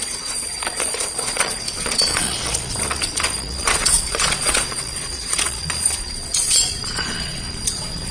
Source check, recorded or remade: remade